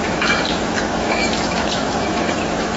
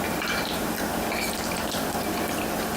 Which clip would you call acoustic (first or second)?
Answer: second